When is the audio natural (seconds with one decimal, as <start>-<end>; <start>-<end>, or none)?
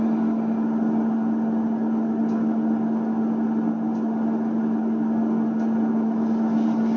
0.0-7.0